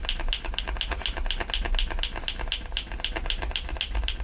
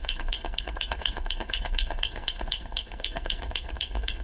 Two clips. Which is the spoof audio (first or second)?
second